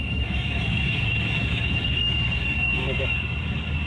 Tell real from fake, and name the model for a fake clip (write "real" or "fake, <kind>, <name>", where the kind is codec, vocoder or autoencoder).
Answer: fake, codec, DAC